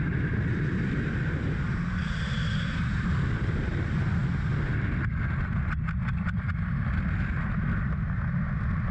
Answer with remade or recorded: recorded